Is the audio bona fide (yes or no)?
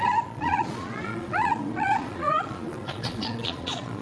no